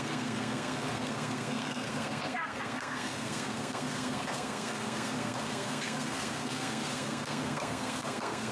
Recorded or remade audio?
remade